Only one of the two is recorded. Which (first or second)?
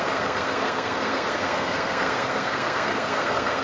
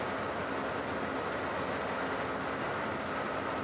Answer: second